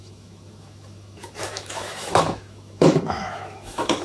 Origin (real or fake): fake